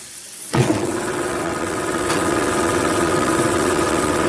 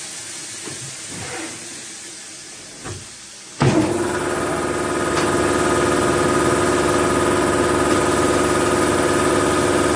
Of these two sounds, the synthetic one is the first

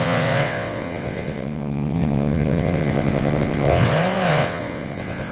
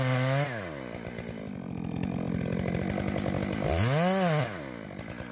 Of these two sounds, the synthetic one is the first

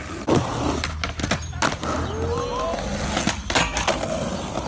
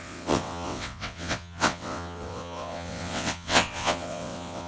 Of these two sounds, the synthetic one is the second